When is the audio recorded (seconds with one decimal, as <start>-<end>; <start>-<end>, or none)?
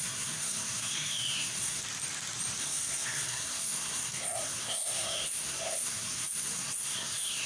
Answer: 1.8-2.6